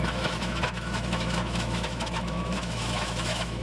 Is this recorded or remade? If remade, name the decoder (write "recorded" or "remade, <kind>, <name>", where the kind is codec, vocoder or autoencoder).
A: remade, autoencoder, DAC-VAE